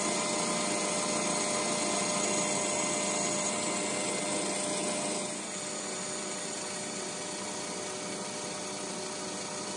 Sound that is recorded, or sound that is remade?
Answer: recorded